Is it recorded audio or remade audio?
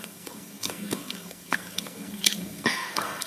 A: remade